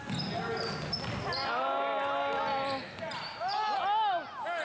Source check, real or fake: real